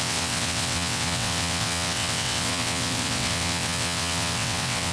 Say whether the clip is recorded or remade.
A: remade